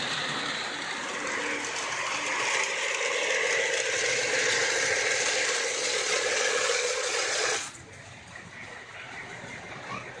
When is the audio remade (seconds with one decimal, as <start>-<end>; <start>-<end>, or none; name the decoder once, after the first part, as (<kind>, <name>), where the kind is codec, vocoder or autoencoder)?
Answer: 5.8-7.8 (vocoder, Vocos)